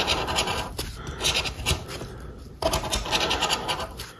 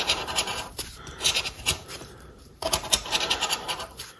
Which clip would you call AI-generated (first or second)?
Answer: second